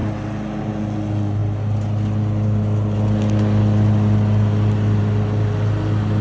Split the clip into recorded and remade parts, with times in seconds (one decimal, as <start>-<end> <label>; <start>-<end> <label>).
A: 0.0-6.2 recorded